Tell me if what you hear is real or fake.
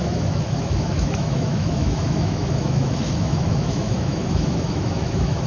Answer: fake